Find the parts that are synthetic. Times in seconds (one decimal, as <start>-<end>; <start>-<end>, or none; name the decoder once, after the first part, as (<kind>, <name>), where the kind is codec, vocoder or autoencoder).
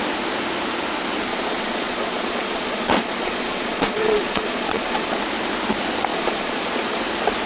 1.3-5.2 (vocoder, Vocos); 6.1-7.0